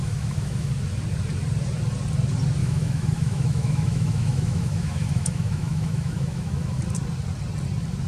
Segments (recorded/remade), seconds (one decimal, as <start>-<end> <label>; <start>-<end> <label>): 0.0-0.7 remade; 0.7-2.6 recorded; 2.6-6.8 remade; 6.8-8.1 recorded